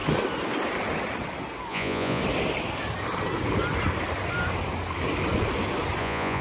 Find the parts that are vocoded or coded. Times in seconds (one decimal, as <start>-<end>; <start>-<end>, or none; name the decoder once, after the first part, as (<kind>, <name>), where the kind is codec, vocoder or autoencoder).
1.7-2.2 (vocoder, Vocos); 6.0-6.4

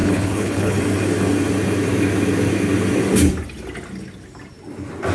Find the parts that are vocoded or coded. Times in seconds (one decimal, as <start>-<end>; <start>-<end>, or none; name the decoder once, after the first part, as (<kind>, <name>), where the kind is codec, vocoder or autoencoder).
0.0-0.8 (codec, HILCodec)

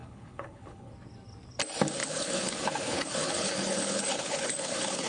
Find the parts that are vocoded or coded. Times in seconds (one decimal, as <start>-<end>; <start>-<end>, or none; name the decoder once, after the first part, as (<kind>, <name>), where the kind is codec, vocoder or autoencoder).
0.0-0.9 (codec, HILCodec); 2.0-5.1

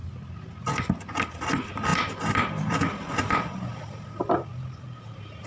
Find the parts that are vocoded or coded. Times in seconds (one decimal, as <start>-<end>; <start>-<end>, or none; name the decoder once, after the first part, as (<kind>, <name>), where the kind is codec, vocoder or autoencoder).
none

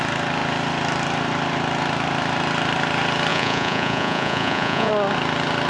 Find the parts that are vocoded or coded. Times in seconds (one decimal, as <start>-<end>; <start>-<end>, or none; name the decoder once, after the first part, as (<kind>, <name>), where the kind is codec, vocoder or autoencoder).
3.3-4.9 (vocoder, Vocos)

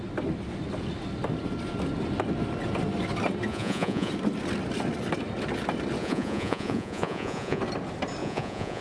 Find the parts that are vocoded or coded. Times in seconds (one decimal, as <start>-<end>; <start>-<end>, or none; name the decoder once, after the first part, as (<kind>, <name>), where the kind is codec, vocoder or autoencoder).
3.5-4.1 (vocoder, Vocos); 6.0-7.6; 8.2-8.8

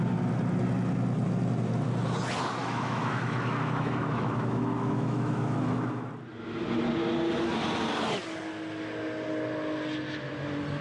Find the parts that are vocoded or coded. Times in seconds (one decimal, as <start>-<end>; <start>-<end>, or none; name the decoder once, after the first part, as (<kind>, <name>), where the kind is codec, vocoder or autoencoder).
2.6-6.1 (autoencoder, DAC-VAE)

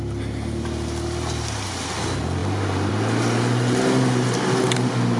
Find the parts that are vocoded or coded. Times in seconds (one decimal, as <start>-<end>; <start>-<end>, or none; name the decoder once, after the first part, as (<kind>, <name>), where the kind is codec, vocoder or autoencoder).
none